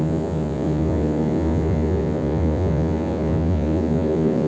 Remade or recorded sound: remade